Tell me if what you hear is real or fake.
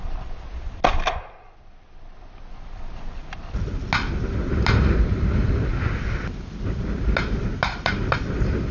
real